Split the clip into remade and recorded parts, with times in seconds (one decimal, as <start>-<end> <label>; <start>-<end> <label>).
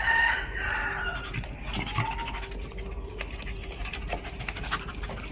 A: 0.0-5.3 recorded